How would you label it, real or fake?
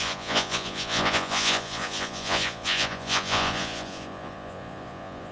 fake